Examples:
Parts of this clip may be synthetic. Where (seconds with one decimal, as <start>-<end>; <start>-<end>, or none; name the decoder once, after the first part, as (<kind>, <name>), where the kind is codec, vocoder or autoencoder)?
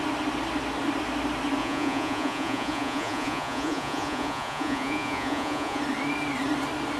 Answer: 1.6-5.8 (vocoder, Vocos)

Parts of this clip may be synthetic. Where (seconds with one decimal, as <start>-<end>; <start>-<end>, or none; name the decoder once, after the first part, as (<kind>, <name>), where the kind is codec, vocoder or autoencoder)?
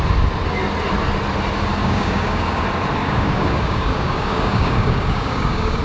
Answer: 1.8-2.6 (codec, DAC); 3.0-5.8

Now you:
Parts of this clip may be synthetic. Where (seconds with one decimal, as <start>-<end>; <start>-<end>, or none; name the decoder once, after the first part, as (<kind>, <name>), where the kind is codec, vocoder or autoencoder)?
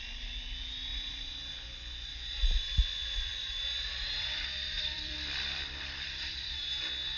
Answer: 0.9-1.5 (vocoder, BigVGAN v2); 3.3-6.6